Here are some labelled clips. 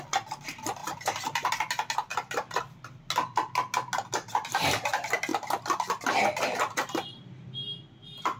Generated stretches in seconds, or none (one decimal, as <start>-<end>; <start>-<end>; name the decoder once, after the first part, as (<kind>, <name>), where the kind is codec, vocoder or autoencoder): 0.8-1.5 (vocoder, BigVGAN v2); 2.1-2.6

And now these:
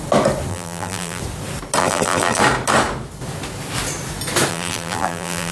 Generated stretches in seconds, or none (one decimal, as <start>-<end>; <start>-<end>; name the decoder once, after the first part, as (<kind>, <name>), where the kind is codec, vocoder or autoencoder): 0.5-1.2 (vocoder, BigVGAN v2); 1.8-2.4; 4.5-5.5

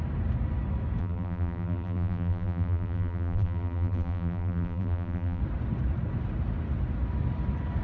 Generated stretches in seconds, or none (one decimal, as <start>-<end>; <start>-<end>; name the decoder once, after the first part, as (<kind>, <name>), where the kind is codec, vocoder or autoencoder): 1.0-5.4 (vocoder, BigVGAN v2)

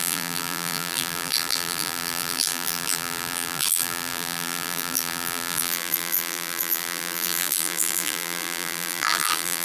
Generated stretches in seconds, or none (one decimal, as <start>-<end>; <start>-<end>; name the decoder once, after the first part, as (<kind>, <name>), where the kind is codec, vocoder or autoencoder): 0.0-9.6 (vocoder, BigVGAN v2)